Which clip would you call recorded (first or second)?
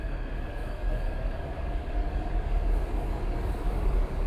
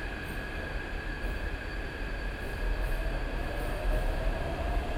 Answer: second